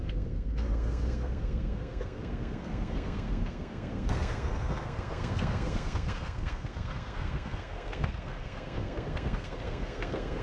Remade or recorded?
remade